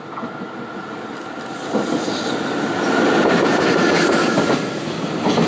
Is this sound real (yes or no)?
yes